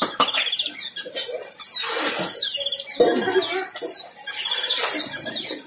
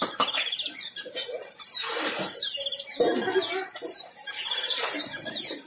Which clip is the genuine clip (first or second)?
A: first